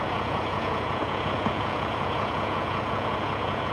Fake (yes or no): yes